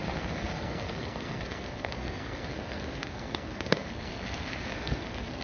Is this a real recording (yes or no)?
no